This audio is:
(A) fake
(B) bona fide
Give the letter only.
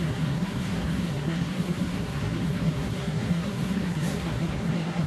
A